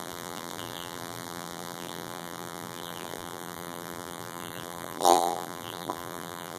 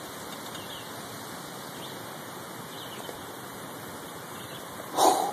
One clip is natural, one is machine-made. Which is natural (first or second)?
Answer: second